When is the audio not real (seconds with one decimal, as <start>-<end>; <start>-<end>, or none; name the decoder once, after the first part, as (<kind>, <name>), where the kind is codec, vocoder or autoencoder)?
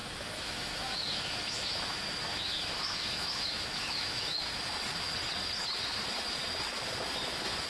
0.0-4.6 (autoencoder, DAC-VAE)